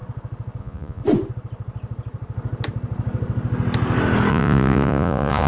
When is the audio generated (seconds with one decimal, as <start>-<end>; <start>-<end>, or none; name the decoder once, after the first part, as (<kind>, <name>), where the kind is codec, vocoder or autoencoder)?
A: 0.6-1.0 (vocoder, Vocos); 4.3-5.5